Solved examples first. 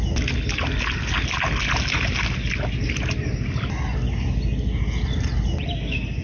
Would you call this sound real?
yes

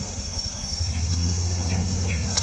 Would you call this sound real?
no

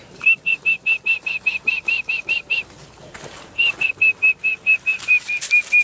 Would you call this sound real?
yes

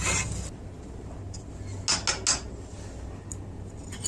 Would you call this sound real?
yes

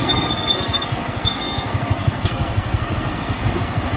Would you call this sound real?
no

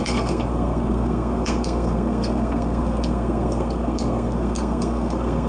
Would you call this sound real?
no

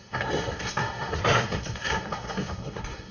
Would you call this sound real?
no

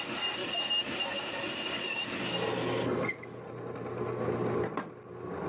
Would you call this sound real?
yes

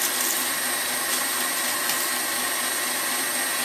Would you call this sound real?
yes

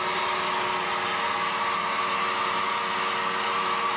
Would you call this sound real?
yes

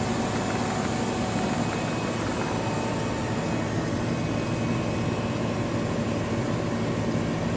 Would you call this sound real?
yes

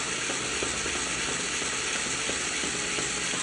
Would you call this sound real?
yes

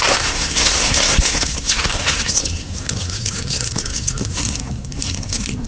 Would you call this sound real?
no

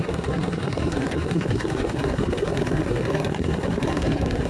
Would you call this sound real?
no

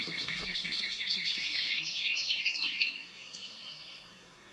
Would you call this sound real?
no